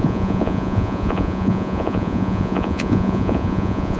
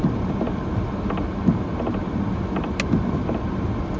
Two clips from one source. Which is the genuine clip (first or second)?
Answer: second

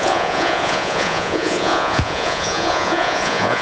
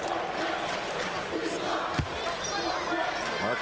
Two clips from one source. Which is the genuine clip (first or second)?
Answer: second